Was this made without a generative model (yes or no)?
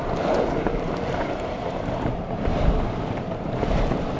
no